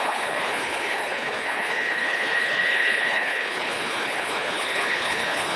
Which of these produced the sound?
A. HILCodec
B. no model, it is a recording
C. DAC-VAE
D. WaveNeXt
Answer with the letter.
A